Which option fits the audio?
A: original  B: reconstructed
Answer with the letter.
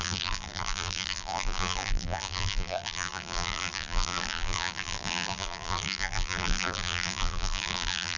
B